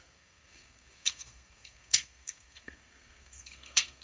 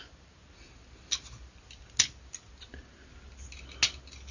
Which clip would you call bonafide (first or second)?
second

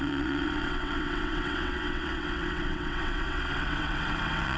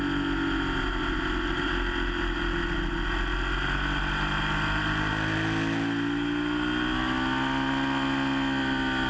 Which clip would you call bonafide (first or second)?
second